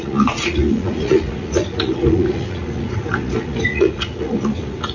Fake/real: fake